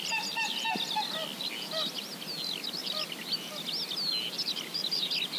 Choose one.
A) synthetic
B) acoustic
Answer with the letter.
B